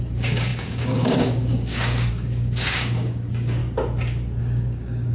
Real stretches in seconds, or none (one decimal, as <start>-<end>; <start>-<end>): 3.6-4.4